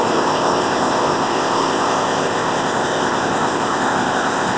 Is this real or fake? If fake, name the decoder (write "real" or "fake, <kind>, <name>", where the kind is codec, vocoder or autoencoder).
fake, codec, ZipCodec